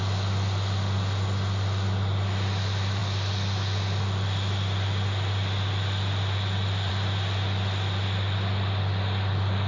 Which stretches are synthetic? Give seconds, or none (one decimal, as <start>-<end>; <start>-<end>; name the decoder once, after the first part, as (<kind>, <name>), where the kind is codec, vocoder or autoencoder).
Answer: none